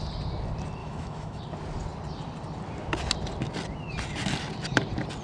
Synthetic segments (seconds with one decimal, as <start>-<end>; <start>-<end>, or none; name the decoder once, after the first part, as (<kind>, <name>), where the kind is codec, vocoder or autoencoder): 0.8-1.4 (autoencoder, DAC-VAE)